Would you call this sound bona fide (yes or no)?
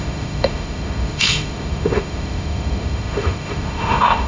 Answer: no